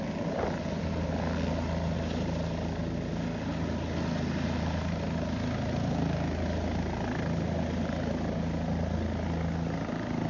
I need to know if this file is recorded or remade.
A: recorded